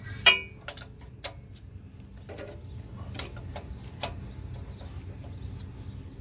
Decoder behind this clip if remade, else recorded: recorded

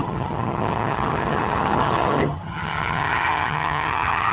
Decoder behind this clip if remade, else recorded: remade, vocoder, HiFi-GAN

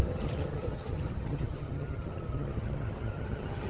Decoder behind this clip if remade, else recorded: remade, vocoder, HiFi-GAN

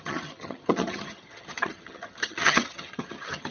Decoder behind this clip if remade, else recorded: remade, vocoder, HiFi-GAN